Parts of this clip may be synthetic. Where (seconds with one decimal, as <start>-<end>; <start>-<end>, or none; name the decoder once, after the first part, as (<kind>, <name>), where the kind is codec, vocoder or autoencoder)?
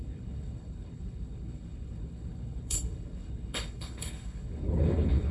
0.0-5.3 (codec, HILCodec)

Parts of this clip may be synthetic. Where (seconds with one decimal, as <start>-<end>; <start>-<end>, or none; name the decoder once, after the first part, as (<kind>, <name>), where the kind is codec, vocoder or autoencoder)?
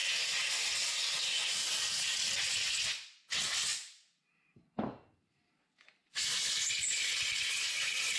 none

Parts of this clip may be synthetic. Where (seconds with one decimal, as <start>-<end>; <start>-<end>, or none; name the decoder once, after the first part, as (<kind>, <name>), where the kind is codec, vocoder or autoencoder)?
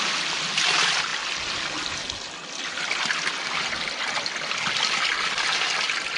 none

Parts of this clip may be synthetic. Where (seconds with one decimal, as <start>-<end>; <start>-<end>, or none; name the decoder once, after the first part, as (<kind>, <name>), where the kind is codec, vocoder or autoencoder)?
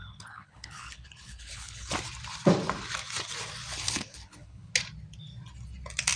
0.0-1.9 (codec, HILCodec); 3.7-4.7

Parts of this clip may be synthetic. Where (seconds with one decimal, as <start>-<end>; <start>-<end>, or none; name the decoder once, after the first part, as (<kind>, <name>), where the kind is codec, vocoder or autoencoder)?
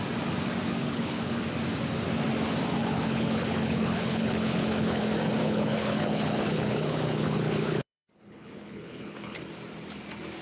0.8-1.4 (codec, HILCodec); 2.8-5.0; 5.4-9.4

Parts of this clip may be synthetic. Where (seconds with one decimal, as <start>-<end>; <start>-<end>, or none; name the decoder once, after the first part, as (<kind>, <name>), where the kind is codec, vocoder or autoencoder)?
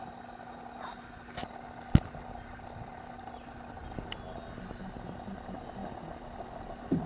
none